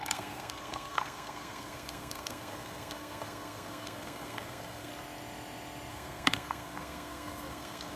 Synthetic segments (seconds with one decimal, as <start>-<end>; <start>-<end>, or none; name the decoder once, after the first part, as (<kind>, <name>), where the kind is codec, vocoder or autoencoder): 0.0-4.9 (codec, SNAC); 5.9-8.0